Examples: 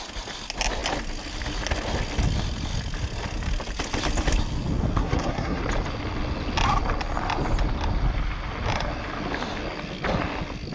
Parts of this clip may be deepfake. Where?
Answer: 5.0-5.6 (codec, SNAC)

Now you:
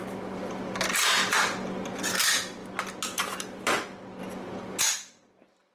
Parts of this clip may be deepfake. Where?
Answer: none

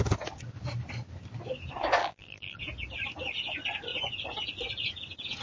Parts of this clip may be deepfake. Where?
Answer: 2.0-2.6 (vocoder, BigVGAN v2)

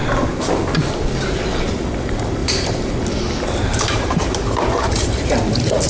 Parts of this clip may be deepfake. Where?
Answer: 2.4-2.9 (vocoder, BigVGAN v2); 3.7-5.4